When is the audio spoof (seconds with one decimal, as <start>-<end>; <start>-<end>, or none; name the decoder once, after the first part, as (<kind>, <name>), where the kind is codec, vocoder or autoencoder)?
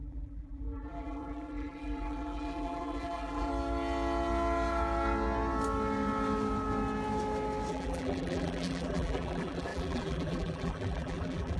0.0-3.5 (vocoder, BigVGAN v2); 7.7-11.6